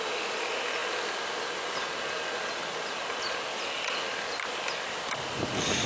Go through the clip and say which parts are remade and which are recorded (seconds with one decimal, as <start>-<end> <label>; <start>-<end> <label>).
0.0-5.9 recorded